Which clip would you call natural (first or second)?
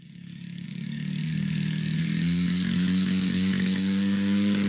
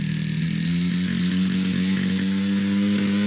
second